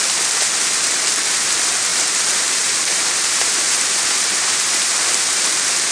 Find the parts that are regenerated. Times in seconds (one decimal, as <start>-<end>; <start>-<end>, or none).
1.9-5.4